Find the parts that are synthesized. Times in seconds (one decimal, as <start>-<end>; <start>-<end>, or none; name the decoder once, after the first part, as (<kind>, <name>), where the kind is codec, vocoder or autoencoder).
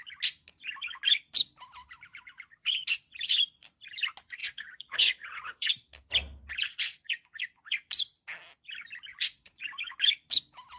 4.4-5.7 (vocoder, Vocos); 9.1-9.6